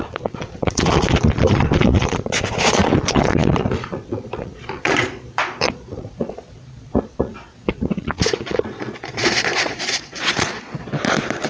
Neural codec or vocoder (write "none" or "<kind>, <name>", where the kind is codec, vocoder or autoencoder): vocoder, Vocos